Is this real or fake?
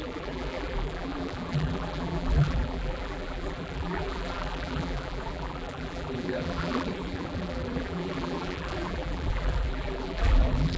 fake